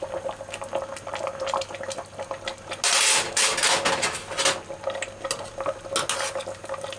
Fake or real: real